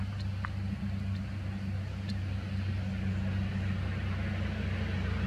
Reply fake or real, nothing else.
real